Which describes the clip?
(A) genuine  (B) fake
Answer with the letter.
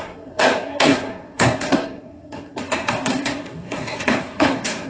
B